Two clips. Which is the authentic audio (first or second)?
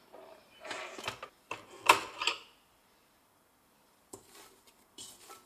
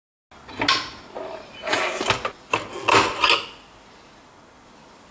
second